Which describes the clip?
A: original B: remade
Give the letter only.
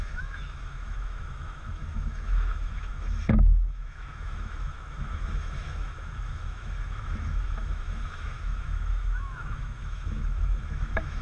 B